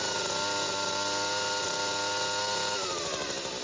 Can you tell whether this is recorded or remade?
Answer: recorded